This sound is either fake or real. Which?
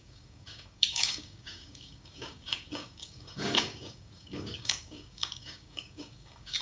fake